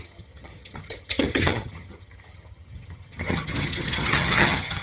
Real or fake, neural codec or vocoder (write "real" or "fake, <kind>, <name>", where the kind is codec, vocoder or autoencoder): fake, vocoder, HiFi-GAN